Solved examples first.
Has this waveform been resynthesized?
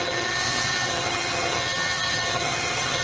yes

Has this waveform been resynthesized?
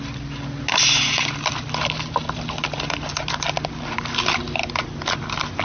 no